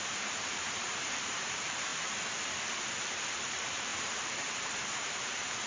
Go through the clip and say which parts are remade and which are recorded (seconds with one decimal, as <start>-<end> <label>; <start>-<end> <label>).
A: 0.0-1.9 remade; 1.9-2.8 recorded; 2.8-5.7 remade